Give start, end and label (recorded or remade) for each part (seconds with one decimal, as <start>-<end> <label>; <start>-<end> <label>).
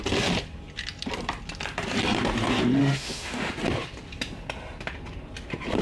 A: 0.0-2.8 recorded; 2.8-3.5 remade; 3.5-5.8 recorded